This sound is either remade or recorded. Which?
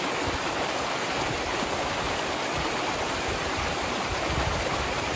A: remade